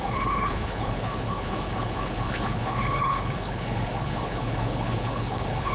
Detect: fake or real fake